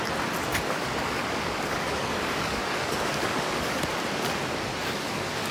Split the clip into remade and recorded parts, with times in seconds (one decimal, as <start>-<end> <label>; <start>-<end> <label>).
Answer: 0.0-0.5 recorded; 0.5-3.8 remade; 3.8-4.8 recorded; 4.8-5.5 remade